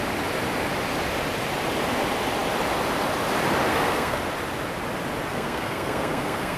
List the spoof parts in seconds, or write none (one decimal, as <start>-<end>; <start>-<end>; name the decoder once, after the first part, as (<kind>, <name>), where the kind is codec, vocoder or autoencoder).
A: 3.7-4.2 (codec, SNAC); 5.3-6.6